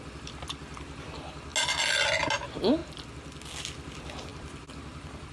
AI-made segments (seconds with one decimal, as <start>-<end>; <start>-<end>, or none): none